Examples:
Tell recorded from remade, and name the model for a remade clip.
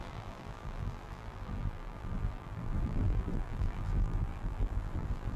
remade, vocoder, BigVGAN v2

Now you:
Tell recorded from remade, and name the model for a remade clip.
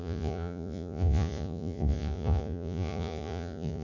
remade, vocoder, Vocos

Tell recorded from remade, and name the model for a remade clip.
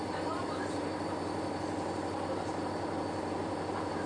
recorded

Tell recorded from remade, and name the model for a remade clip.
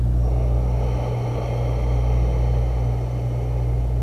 recorded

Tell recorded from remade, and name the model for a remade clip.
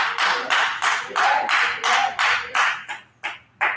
recorded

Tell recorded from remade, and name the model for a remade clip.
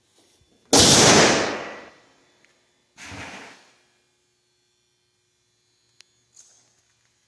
recorded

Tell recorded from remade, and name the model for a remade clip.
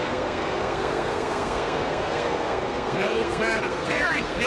remade, codec, SNAC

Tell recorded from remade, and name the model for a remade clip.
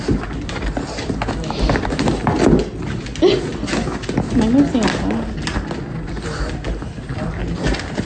recorded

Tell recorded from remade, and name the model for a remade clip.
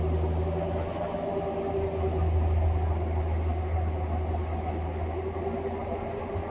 recorded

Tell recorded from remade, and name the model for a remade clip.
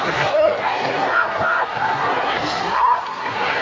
remade, codec, SNAC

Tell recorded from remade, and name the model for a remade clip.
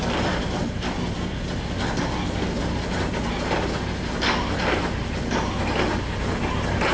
recorded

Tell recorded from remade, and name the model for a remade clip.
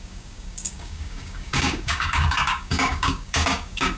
remade, codec, DAC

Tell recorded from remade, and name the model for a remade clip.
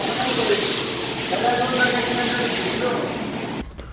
recorded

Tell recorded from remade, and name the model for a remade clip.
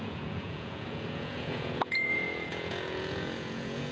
remade, vocoder, Vocos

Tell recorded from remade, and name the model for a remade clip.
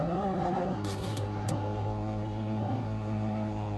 remade, codec, SNAC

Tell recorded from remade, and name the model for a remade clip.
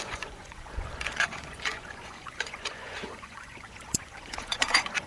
remade, vocoder, Vocos